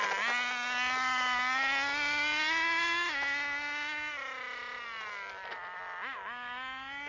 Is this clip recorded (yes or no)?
yes